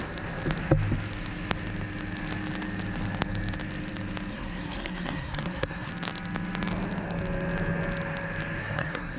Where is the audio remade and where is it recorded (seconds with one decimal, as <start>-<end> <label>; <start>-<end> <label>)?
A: 0.0-4.3 recorded; 4.3-5.9 remade; 5.9-8.6 recorded; 8.6-9.2 remade